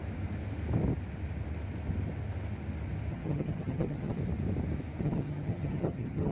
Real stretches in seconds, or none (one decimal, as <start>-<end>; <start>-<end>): 0.0-3.1; 4.2-5.0